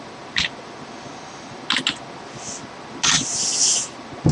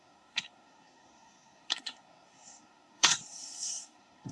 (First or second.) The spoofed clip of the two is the second